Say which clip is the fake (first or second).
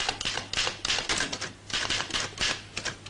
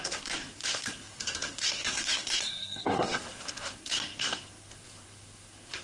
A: second